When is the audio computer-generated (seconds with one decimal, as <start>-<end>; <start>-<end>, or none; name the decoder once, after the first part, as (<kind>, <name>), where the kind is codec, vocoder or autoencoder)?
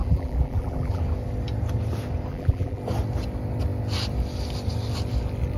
0.0-1.0 (vocoder, BigVGAN v2); 2.3-2.8